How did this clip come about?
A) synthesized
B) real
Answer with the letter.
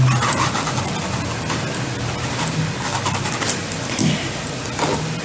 B